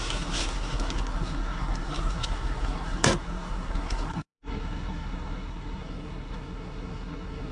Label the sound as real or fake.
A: fake